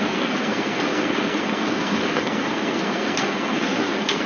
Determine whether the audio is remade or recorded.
remade